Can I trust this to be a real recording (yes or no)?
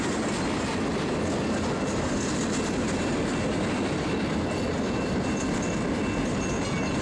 yes